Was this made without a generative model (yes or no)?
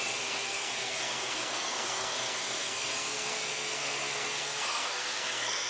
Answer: no